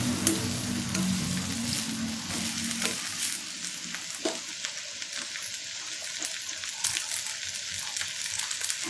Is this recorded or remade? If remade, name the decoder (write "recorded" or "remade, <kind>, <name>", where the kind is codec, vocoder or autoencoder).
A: recorded